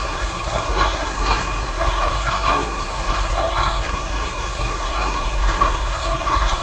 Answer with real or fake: fake